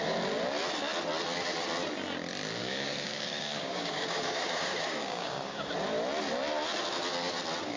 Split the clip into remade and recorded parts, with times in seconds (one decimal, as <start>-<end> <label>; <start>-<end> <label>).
0.0-2.6 recorded; 2.6-5.7 remade; 5.7-7.8 recorded